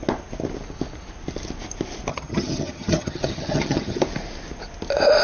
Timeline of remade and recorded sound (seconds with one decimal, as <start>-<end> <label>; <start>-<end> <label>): 0.0-2.1 recorded; 2.1-4.0 remade; 4.0-5.2 recorded